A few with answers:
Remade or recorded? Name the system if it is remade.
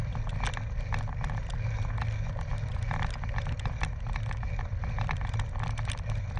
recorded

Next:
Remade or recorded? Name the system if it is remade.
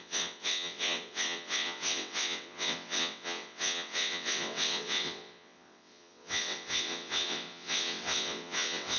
remade, vocoder, WaveNeXt